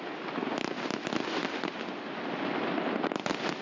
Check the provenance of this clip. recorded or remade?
recorded